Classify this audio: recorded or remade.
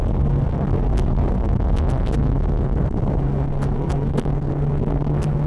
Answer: remade